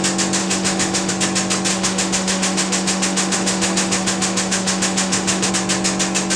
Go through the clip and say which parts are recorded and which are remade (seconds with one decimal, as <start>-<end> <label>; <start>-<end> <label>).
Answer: 0.0-0.4 recorded; 0.4-1.1 remade; 1.1-1.7 recorded; 1.7-5.5 remade; 5.5-6.4 recorded